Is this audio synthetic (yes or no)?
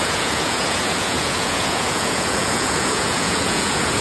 yes